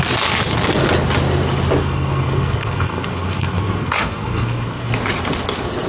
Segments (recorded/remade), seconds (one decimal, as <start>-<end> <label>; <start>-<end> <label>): 0.0-1.8 recorded; 1.8-4.9 remade; 4.9-5.9 recorded